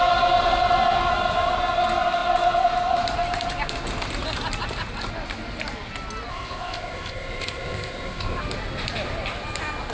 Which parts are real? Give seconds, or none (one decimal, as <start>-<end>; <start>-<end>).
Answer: 0.0-6.3; 8.4-9.9